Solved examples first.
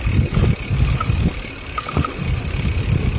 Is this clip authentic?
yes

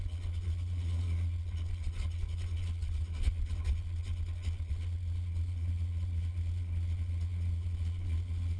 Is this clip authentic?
no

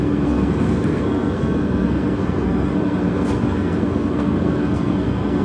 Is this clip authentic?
no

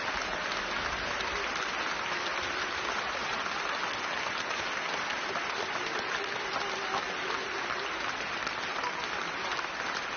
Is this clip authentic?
yes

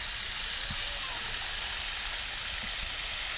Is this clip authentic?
yes